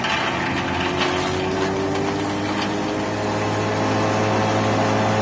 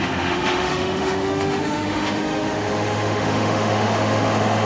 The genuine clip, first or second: first